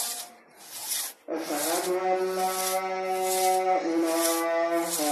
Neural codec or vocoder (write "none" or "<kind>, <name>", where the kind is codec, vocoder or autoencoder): none